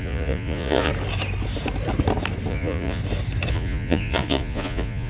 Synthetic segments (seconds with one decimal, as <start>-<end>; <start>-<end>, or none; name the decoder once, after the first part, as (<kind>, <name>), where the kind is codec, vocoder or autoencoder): 0.0-0.9 (vocoder, Vocos); 2.5-3.0; 3.5-5.1